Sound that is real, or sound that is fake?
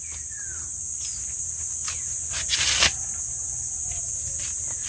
real